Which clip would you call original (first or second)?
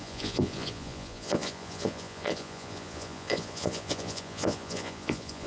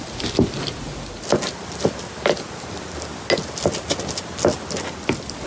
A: second